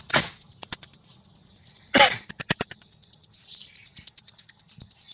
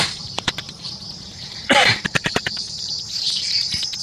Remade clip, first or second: second